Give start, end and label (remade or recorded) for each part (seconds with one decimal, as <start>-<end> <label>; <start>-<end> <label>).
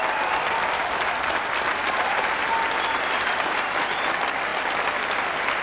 0.0-5.6 recorded